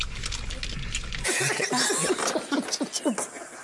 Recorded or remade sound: recorded